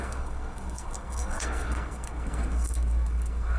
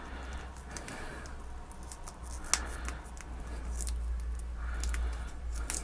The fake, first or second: first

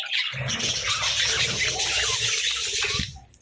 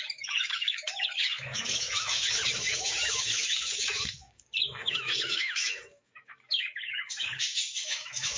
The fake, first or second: second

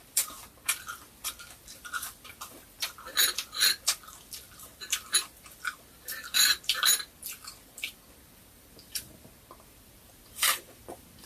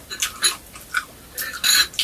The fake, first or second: first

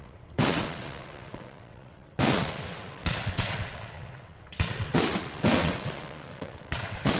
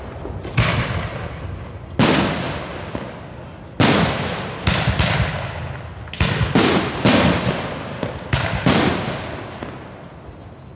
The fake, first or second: first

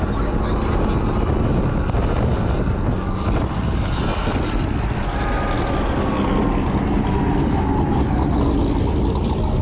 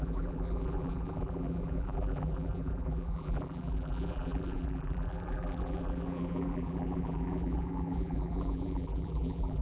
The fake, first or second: second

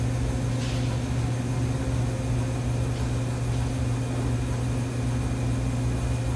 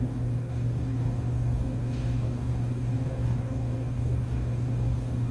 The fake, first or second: second